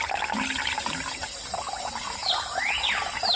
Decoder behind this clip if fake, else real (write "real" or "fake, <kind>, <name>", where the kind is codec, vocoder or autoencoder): real